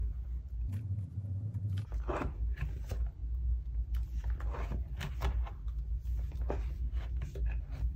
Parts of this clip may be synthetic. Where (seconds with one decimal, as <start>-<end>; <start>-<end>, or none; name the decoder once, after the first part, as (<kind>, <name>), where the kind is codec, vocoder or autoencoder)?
none